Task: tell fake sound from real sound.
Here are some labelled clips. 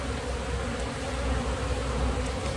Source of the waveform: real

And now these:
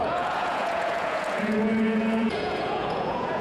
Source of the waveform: fake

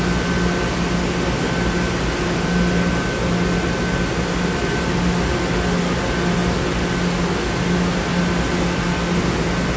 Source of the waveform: real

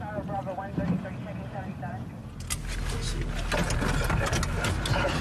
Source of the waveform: real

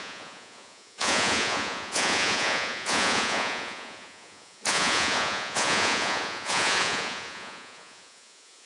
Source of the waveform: fake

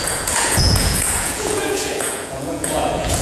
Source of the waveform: fake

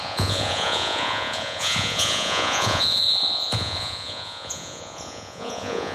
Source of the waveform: fake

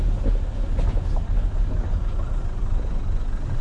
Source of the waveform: real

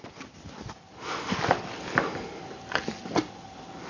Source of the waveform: real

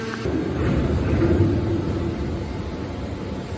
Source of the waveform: real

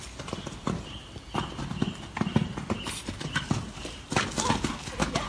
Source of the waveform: real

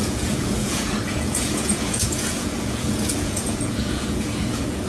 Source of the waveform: fake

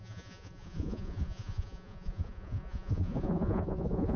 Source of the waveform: fake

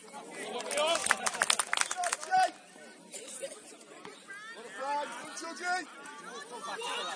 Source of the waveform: real